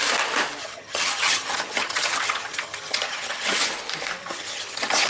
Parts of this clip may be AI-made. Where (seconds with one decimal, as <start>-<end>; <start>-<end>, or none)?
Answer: 0.6-3.7; 4.2-5.1